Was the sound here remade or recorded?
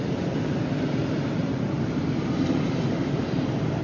recorded